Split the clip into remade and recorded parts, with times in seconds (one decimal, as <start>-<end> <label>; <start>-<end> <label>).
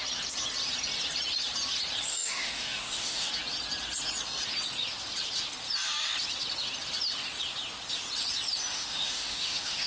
0.0-2.1 recorded; 2.1-3.3 remade; 3.3-8.7 recorded; 8.7-9.9 remade